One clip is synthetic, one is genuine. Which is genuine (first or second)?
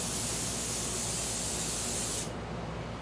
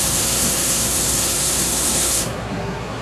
first